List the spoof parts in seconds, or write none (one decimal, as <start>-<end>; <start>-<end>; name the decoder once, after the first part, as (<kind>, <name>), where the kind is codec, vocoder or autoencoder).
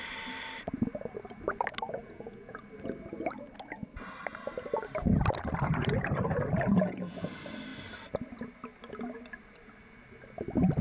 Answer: 2.0-2.6 (vocoder, Vocos); 6.7-7.3